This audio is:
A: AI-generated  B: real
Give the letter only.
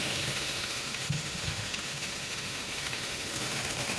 A